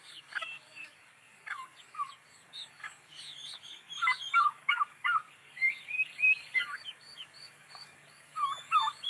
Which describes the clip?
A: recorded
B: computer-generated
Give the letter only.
B